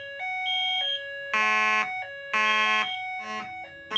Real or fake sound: real